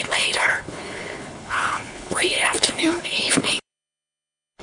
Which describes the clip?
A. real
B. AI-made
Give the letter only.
B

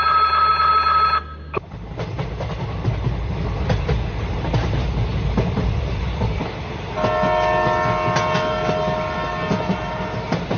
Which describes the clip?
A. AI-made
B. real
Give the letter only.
B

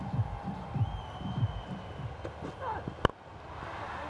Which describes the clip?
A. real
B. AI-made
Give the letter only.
A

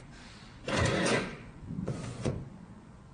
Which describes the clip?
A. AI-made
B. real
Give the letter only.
A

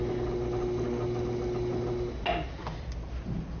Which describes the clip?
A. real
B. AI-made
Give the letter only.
A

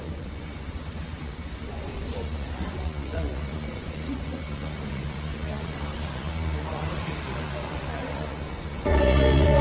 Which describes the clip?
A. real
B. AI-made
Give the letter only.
B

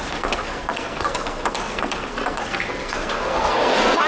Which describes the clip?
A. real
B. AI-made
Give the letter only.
B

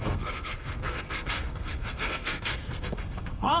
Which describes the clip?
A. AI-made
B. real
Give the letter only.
A